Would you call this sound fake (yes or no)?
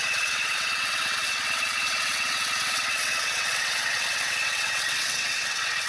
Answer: yes